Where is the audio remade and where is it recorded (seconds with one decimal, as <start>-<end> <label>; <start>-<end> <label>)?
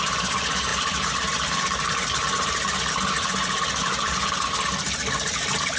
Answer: 0.0-5.8 recorded